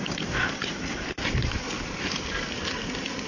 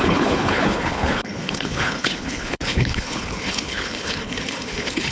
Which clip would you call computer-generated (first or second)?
second